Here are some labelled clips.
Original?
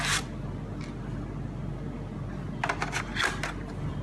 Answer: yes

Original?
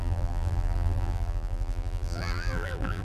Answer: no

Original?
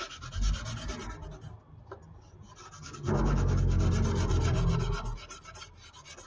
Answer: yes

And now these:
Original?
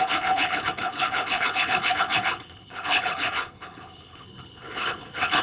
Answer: no